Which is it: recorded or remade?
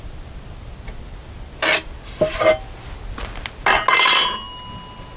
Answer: recorded